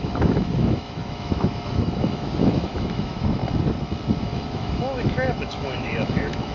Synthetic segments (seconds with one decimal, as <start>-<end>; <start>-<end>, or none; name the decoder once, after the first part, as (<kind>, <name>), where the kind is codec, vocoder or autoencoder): 0.0-3.4 (autoencoder, DAC-VAE); 4.2-6.5

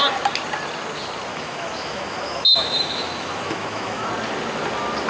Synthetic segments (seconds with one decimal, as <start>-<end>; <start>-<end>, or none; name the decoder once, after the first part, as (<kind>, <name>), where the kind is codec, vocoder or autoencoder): 1.3-4.1 (autoencoder, DAC-VAE)

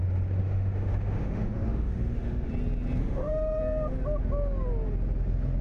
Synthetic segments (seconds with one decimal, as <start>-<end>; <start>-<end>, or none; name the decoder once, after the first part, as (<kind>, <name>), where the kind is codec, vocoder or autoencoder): 0.4-2.5 (autoencoder, DAC-VAE); 3.0-3.6

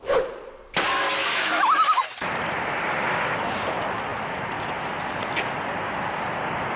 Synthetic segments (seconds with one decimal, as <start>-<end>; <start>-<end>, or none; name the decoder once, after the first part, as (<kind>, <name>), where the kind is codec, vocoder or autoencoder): 1.2-2.0 (autoencoder, DAC-VAE)

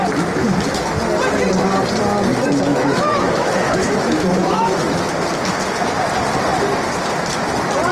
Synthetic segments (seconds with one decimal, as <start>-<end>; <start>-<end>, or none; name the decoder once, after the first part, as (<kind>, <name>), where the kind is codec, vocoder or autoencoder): 2.7-5.1 (autoencoder, DAC-VAE)

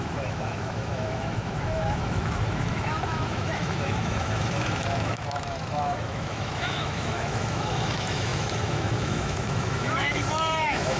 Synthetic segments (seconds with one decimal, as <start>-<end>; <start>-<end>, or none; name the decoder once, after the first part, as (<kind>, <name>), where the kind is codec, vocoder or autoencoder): 0.0-11.0 (autoencoder, DAC-VAE)

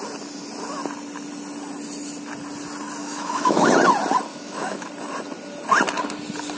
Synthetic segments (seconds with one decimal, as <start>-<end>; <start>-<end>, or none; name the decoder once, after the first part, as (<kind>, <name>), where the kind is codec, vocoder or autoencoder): 3.0-3.7 (autoencoder, DAC-VAE); 4.3-4.9

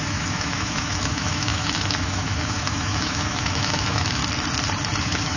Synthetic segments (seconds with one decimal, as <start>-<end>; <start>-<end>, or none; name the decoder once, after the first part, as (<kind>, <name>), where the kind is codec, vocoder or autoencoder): 0.0-4.2 (autoencoder, DAC-VAE); 5.0-5.4